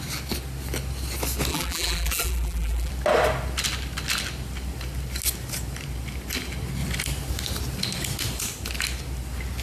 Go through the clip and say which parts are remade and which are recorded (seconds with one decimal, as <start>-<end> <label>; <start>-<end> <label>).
0.0-1.5 recorded; 1.5-2.9 remade; 2.9-9.6 recorded